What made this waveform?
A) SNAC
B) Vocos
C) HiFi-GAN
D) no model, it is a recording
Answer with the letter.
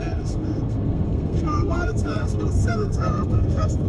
A